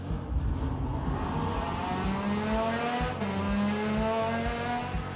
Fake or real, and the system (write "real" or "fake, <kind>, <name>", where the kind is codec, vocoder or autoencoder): real